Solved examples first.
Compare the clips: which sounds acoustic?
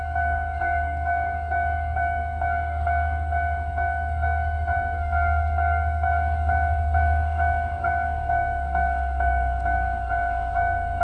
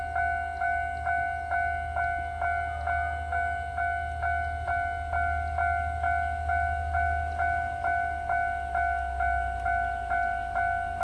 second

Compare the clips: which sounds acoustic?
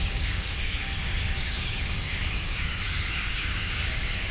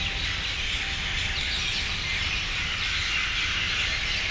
second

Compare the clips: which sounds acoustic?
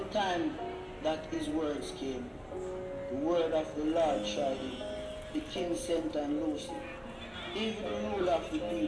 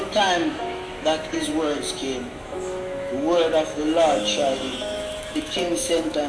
first